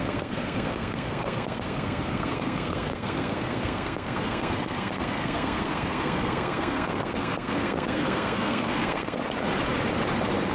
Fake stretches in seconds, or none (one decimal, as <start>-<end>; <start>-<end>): 0.0-9.2